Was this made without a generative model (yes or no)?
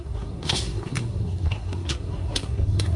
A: no